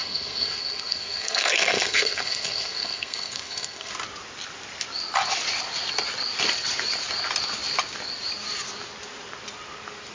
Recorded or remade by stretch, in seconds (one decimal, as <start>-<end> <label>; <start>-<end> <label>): 0.0-3.9 remade; 3.9-10.1 recorded